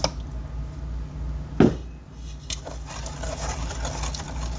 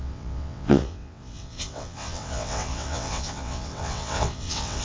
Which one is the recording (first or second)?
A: first